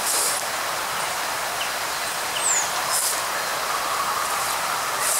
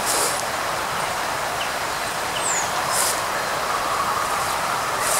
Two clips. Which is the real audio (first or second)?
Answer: first